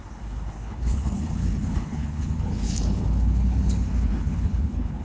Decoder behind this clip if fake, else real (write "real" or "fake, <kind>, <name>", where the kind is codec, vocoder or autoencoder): fake, codec, HILCodec